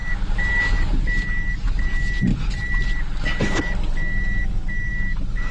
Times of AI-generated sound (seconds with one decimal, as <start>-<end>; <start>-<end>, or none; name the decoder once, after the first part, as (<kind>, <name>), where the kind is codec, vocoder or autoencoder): none